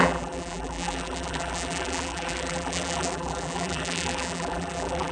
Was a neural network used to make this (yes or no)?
yes